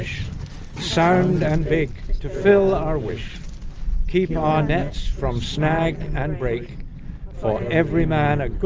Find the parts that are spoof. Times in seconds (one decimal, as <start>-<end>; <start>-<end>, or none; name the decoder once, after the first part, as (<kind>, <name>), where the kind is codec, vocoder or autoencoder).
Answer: none